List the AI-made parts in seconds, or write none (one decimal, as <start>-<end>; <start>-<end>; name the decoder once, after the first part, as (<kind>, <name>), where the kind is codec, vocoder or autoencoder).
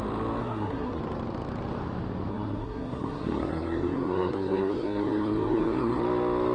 0.4-1.0 (codec, SNAC); 2.3-6.0